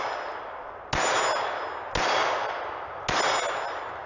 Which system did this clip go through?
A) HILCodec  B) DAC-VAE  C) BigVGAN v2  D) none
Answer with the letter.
D